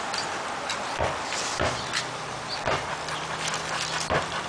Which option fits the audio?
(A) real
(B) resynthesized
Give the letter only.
A